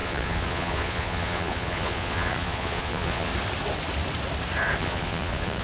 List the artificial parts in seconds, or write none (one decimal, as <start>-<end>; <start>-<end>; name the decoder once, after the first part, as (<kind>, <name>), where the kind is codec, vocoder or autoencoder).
0.0-3.3 (vocoder, Vocos); 4.8-5.6